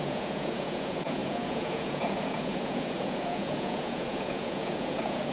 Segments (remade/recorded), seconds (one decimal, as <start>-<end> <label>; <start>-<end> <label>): 0.0-5.3 remade